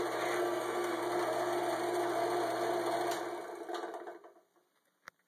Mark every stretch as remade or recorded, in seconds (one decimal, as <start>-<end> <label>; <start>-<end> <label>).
0.0-0.4 recorded; 0.4-1.0 remade; 1.0-5.3 recorded